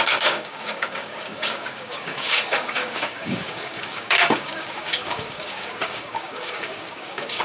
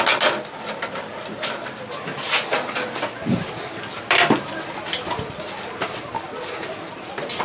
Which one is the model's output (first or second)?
first